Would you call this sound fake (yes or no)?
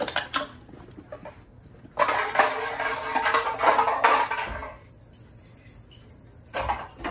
no